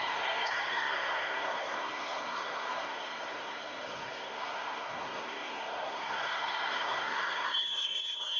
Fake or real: fake